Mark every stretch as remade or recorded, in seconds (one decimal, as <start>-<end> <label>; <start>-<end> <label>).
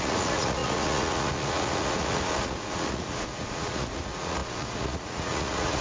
0.0-5.8 remade